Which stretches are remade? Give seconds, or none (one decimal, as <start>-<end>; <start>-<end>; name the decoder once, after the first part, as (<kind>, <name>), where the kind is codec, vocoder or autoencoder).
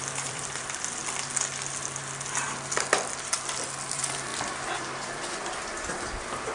0.0-1.0 (vocoder, BigVGAN v2); 3.9-6.5